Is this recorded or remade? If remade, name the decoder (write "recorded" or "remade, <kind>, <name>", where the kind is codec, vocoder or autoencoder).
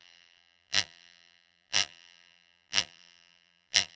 remade, vocoder, BigVGAN v2